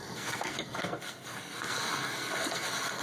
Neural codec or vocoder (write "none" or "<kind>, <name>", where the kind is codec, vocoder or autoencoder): codec, SNAC